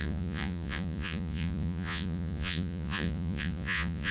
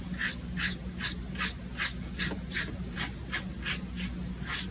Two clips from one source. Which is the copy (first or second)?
first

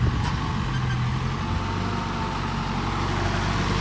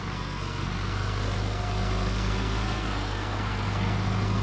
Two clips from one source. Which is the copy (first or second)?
second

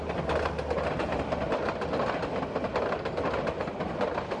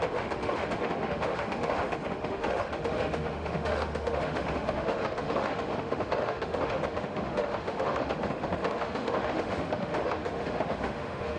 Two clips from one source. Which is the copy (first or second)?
second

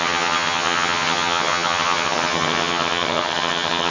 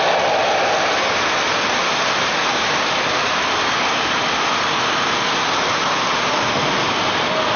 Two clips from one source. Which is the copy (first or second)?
first